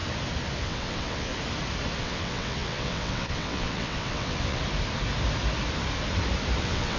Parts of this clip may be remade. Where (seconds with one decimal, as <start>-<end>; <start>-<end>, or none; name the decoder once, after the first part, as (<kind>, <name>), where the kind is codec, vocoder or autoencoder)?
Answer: 0.6-1.3 (vocoder, WaveNeXt); 2.0-4.6; 6.6-7.0